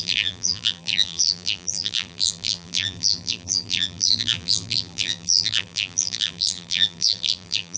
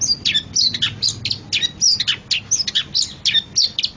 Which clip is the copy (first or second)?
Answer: first